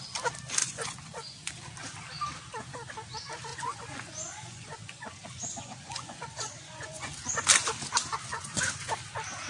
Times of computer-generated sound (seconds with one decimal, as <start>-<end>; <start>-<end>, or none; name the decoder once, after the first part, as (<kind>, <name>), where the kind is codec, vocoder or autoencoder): 0.6-1.5 (vocoder, Vocos); 3.5-7.1; 8.3-8.9